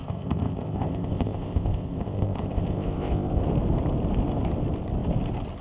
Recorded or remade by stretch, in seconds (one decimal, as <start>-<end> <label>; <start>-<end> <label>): 0.0-3.4 remade; 3.4-5.6 recorded